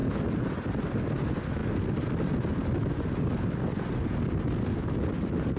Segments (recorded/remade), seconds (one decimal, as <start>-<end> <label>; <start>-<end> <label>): 0.0-5.6 recorded